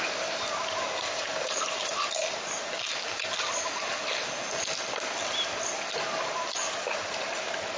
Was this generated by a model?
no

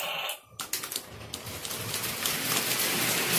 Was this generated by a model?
no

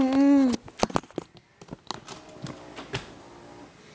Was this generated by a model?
no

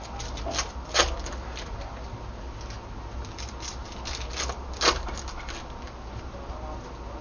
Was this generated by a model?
no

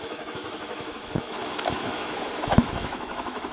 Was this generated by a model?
yes